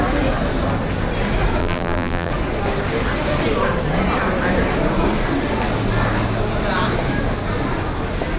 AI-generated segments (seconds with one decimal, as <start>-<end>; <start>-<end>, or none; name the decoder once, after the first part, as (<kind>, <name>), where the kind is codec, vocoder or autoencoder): 1.6-2.3 (vocoder, BigVGAN v2)